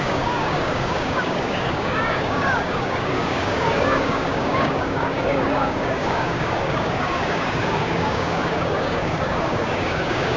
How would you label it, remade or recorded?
remade